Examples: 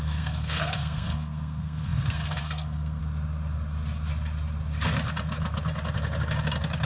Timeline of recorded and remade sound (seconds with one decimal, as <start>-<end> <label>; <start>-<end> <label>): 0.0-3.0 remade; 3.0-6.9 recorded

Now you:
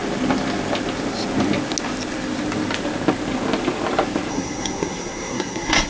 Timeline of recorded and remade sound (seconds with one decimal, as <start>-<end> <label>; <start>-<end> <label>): 0.0-4.3 recorded; 4.3-5.9 remade

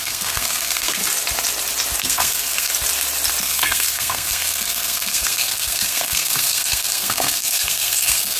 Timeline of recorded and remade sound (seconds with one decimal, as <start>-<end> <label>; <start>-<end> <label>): 0.0-1.0 remade; 1.0-2.0 recorded; 2.0-2.7 remade; 2.7-3.4 recorded; 3.4-8.4 remade